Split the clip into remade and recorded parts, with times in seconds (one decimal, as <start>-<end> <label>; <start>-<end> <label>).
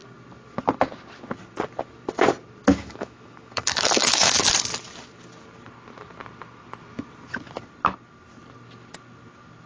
0.0-2.7 recorded; 2.7-4.4 remade; 4.4-9.7 recorded